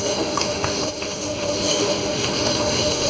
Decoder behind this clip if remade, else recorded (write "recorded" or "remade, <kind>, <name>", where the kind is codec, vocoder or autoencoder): remade, autoencoder, DAC-VAE